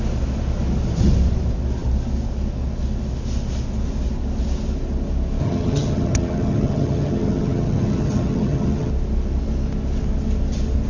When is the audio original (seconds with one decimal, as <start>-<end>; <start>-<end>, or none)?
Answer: 0.0-5.4; 8.9-10.9